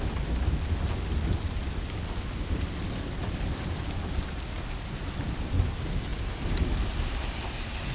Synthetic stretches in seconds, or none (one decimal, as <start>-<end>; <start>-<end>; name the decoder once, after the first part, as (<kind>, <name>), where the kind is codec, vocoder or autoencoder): none